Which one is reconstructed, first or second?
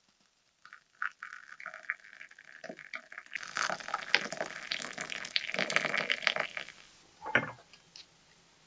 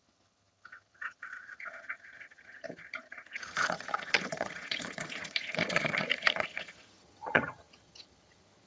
second